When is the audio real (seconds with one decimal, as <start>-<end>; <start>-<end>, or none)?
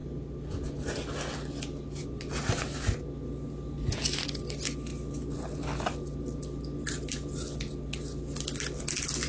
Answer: 0.0-9.3